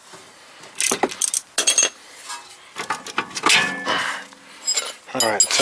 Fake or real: real